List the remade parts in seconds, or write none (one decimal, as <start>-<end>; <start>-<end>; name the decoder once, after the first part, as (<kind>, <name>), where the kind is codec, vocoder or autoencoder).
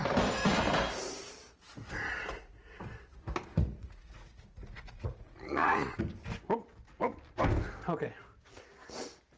3.5-6.0 (vocoder, Vocos)